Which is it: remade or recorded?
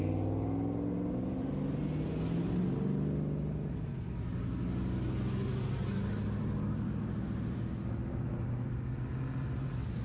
recorded